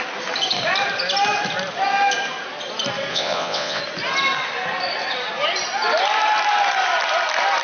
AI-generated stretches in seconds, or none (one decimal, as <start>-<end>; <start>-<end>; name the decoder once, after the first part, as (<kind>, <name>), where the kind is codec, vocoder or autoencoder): 3.1-3.8 (vocoder, WaveNeXt)